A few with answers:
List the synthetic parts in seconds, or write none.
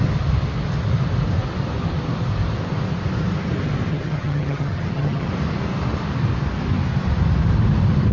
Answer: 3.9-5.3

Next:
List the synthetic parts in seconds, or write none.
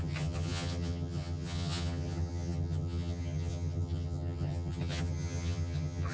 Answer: 0.0-6.1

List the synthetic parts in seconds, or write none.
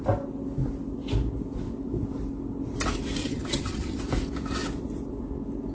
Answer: 3.2-4.0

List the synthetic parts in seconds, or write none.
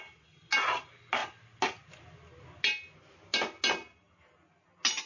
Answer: none